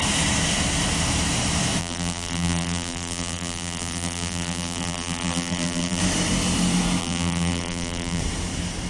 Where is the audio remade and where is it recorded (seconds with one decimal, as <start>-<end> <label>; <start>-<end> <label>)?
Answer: 0.0-1.8 recorded; 1.8-6.0 remade; 6.0-7.0 recorded; 7.0-8.2 remade; 8.2-8.9 recorded